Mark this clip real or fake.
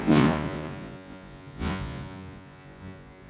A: fake